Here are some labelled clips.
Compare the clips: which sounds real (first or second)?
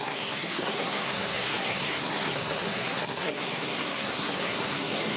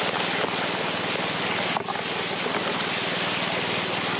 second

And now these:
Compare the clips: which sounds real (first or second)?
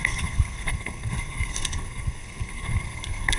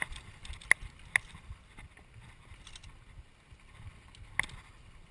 second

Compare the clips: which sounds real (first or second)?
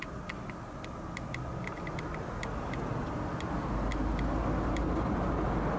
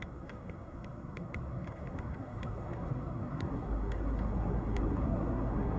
first